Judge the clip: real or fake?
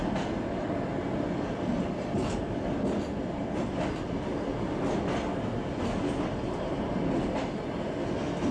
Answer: real